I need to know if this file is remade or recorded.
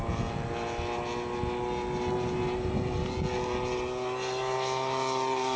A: recorded